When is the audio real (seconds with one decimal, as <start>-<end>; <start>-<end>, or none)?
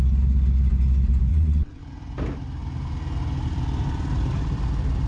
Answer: 0.0-1.3; 1.8-5.1